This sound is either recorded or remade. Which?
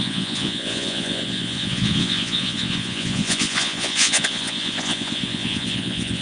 remade